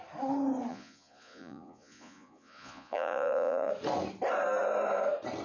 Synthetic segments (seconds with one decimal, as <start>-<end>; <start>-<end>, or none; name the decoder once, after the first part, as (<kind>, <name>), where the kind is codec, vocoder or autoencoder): 0.7-3.7 (vocoder, Vocos)